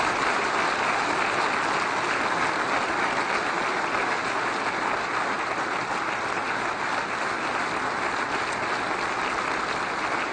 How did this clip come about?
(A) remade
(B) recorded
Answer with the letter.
B